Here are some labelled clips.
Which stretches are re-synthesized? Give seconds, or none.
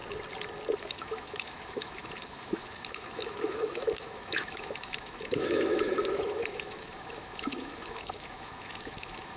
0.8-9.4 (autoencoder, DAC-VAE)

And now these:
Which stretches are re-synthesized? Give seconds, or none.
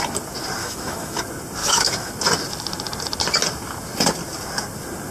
0.6-1.2 (autoencoder, DAC-VAE); 1.6-2.1